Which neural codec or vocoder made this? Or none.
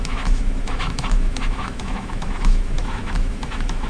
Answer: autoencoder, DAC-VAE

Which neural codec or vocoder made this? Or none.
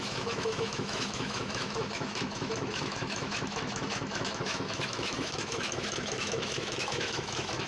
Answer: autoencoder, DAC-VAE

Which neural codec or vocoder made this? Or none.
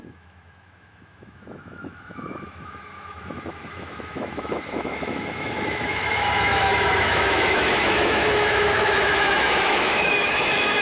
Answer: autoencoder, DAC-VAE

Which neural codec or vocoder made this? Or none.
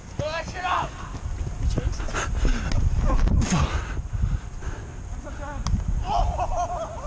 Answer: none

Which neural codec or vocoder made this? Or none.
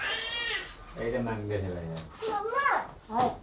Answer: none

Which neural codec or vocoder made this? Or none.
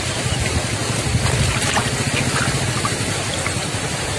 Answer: none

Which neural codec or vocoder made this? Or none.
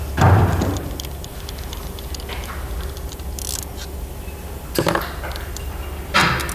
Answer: none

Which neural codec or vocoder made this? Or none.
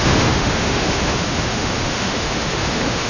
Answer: autoencoder, DAC-VAE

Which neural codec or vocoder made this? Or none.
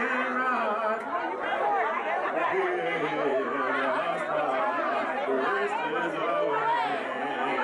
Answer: none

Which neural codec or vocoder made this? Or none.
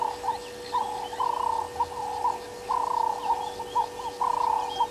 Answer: none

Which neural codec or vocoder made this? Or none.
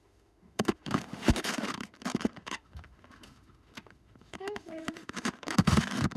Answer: autoencoder, DAC-VAE